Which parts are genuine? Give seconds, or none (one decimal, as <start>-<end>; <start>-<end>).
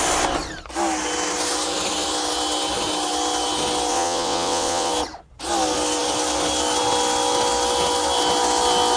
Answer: 0.0-3.9; 4.9-9.0